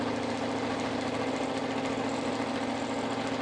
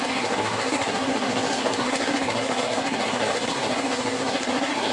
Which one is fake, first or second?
second